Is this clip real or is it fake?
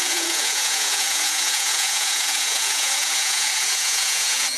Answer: fake